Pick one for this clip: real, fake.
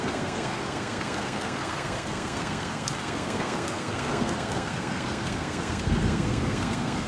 fake